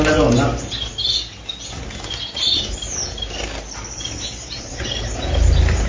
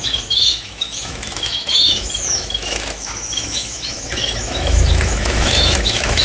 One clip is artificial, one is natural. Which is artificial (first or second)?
second